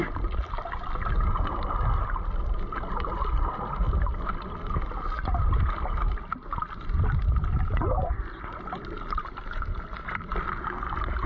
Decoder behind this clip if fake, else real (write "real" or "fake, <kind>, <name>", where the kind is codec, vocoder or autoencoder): real